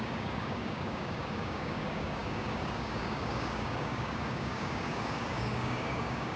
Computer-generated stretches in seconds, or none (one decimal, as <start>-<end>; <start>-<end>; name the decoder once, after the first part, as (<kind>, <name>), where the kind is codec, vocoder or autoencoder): 0.0-6.4 (codec, DAC)

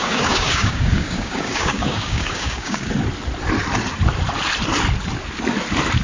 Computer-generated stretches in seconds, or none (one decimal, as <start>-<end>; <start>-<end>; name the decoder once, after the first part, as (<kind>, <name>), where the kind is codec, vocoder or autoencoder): 0.0-2.9 (codec, DAC)

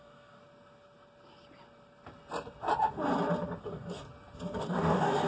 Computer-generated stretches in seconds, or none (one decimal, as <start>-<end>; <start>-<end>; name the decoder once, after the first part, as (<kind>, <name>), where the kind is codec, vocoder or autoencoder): 0.0-0.4 (codec, DAC); 3.6-4.0; 4.6-5.3

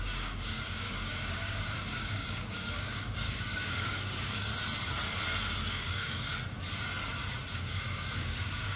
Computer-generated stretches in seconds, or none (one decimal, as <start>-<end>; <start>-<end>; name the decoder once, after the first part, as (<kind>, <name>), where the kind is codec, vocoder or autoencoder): 0.0-4.5 (codec, DAC); 5.7-6.3; 7.5-8.8

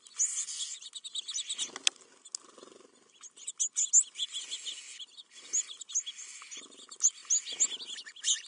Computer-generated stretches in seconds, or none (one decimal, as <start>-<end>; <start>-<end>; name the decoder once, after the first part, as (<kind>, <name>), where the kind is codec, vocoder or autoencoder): none

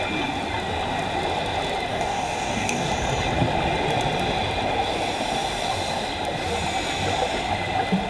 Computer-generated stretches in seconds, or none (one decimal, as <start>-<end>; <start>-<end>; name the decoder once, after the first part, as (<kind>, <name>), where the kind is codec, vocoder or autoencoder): 1.9-2.9 (codec, DAC)

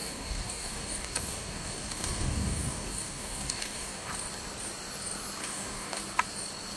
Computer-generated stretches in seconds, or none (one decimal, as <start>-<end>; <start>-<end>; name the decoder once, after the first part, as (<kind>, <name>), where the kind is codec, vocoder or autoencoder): 0.0-4.1 (codec, DAC); 5.4-6.0

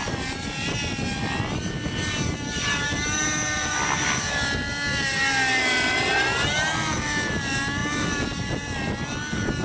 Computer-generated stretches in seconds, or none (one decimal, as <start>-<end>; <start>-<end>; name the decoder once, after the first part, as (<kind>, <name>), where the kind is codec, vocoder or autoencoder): none